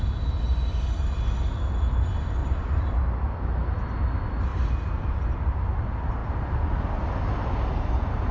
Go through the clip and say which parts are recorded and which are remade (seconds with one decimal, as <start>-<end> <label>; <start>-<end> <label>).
0.0-2.4 recorded; 2.4-3.0 remade; 3.0-4.5 recorded; 4.5-5.2 remade; 5.2-8.3 recorded